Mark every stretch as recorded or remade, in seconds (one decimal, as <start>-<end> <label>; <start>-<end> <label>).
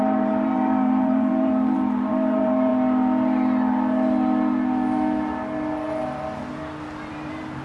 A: 0.0-2.7 remade; 2.7-7.1 recorded; 7.1-7.6 remade